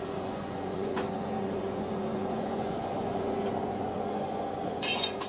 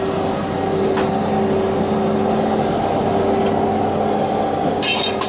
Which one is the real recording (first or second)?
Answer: second